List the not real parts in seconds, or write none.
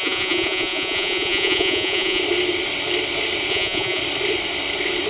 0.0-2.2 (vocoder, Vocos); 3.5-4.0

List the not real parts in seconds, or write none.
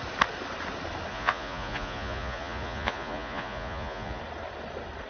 1.1-4.2 (vocoder, Vocos)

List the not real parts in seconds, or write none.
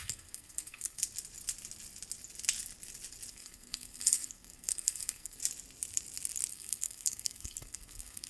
0.0-1.0 (codec, SNAC); 3.3-5.4; 6.5-8.3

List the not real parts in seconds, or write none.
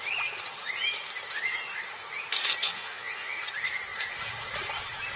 2.6-3.4 (vocoder, Vocos)